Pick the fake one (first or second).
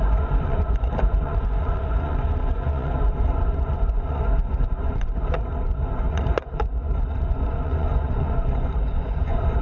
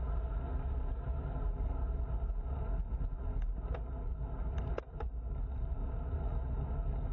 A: first